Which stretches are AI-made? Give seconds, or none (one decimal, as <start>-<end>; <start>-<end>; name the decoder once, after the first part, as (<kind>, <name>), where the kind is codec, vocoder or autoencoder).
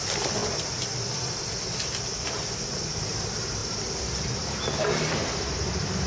0.0-6.1 (vocoder, BigVGAN v2)